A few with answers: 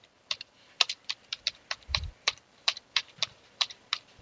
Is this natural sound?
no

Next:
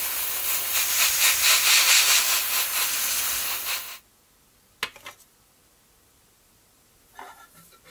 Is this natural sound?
yes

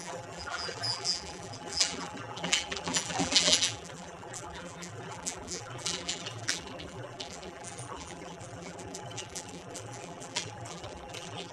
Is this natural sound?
no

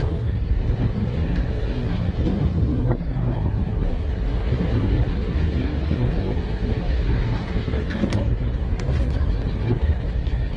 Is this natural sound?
no